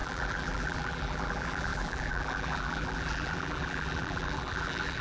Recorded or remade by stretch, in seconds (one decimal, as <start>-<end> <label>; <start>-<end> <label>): 0.0-5.0 remade